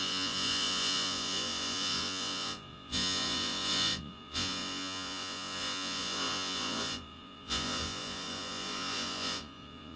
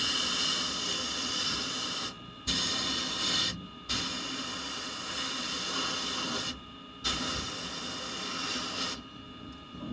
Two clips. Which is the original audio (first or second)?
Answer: second